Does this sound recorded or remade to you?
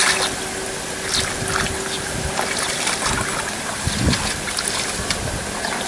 recorded